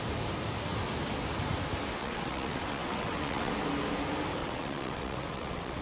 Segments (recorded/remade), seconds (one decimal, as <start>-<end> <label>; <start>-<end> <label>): 0.0-2.0 recorded; 2.0-3.5 remade; 3.5-4.4 recorded; 4.4-5.8 remade